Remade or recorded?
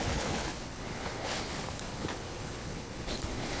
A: remade